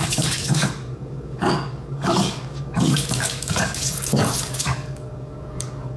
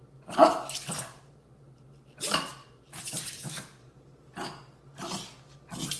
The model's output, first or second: first